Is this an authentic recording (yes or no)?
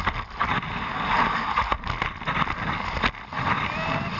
yes